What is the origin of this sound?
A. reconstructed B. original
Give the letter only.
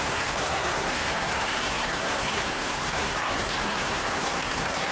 A